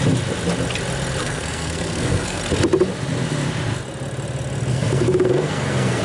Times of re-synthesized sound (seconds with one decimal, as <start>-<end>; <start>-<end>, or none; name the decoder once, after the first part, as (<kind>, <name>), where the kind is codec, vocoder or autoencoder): 1.2-2.4 (codec, SNAC); 4.7-6.0